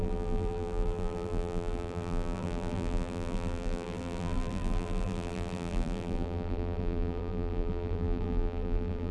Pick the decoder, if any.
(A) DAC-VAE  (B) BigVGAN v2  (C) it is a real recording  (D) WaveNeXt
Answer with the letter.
B